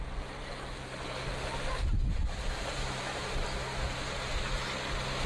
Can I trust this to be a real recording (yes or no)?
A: yes